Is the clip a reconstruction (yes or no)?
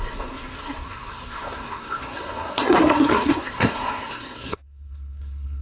yes